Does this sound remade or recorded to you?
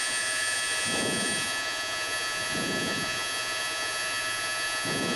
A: remade